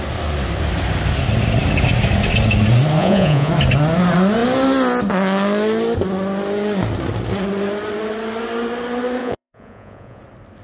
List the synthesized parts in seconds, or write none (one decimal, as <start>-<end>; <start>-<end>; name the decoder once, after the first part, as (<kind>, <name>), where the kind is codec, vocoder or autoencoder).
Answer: 3.0-3.5 (vocoder, Vocos); 9.2-10.2